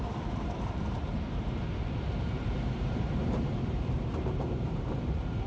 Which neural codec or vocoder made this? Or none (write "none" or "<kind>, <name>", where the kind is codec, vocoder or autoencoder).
vocoder, BigVGAN v2